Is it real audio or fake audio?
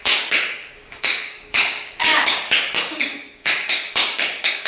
fake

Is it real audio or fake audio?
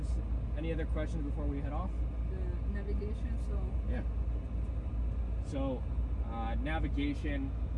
real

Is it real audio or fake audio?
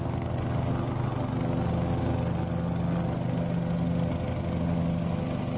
real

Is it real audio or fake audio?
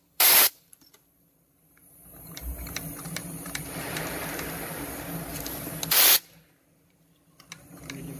fake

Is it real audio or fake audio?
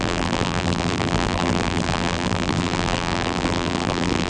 fake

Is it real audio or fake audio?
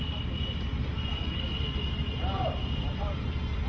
real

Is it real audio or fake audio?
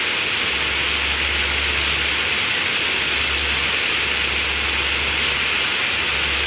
real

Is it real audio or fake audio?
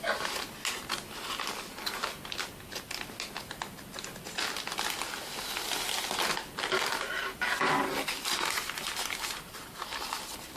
real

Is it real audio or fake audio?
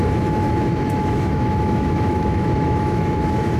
fake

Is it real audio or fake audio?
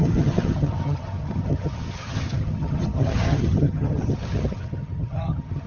fake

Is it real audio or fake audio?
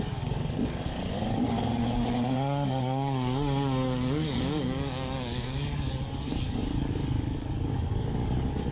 fake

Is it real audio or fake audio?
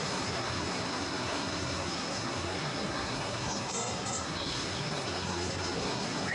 fake